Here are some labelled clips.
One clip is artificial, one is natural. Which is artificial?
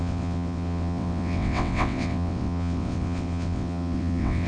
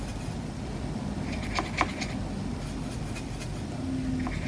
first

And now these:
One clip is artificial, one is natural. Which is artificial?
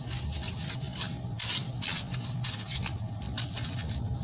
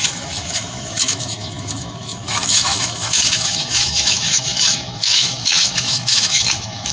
second